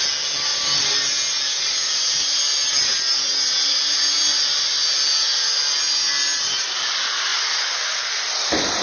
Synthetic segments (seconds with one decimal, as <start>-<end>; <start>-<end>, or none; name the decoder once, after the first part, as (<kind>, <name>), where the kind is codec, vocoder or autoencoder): none